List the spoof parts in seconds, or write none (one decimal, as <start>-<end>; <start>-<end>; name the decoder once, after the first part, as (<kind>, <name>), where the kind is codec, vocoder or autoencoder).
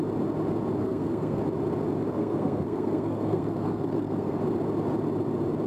0.8-1.4 (codec, SNAC); 2.1-4.4